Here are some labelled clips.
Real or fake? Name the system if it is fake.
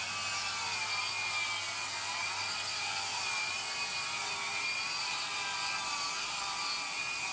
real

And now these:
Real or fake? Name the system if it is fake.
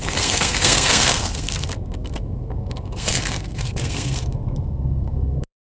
fake, codec, SNAC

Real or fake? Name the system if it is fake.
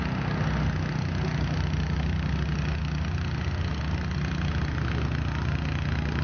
real